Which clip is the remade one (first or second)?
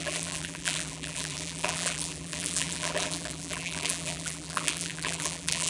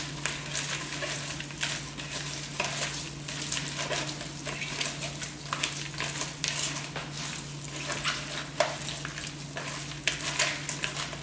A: first